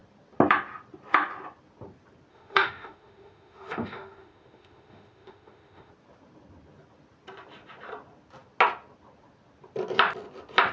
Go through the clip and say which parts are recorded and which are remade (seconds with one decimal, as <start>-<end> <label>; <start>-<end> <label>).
0.0-2.3 recorded; 2.3-5.9 remade; 5.9-10.7 recorded